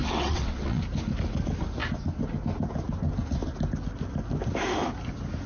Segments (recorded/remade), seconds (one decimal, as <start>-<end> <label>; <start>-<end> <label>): 0.0-0.8 remade; 0.8-5.5 recorded